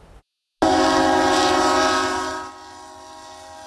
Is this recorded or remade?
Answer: recorded